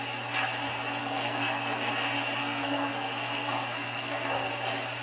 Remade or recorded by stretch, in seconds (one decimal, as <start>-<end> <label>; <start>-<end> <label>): 0.0-1.0 recorded; 1.0-1.9 remade; 1.9-2.4 recorded; 2.4-4.5 remade; 4.5-5.0 recorded